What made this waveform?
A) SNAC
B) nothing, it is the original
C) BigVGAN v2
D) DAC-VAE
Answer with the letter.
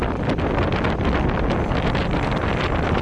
B